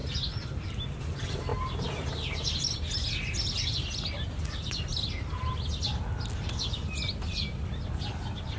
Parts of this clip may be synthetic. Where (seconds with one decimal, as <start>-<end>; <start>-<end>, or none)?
none

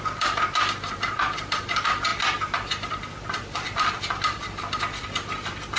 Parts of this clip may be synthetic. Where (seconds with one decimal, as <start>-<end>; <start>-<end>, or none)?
none

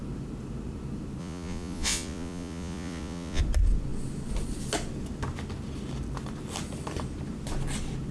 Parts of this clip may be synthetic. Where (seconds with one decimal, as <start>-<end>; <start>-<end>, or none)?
1.2-3.4